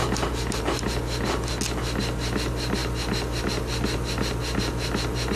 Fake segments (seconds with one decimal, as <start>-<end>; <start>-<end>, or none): none